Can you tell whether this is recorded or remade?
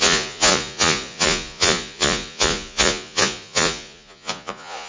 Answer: remade